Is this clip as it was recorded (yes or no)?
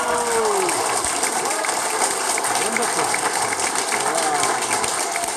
yes